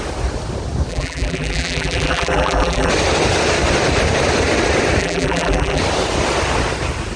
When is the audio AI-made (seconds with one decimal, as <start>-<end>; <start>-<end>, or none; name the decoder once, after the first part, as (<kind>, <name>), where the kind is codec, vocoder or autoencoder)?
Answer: 0.9-2.9 (vocoder, BigVGAN v2); 5.0-5.8